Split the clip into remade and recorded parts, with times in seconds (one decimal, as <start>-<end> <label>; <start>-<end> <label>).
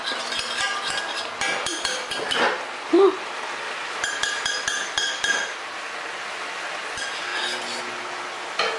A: 0.0-8.8 recorded